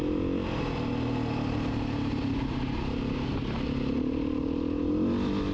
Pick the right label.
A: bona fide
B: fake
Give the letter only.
A